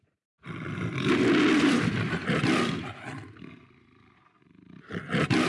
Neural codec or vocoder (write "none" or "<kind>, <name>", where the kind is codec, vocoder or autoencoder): vocoder, BigVGAN v2